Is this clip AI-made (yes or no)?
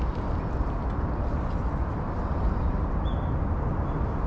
no